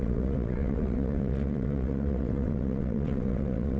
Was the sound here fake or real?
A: fake